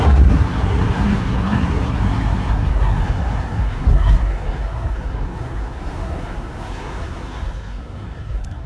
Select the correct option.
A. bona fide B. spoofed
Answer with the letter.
B